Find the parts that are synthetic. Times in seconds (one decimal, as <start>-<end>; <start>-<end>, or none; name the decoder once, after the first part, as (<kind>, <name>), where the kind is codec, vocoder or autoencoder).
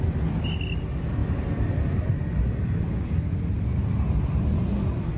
none